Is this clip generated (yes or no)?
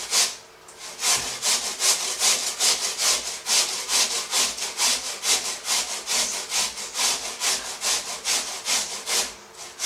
no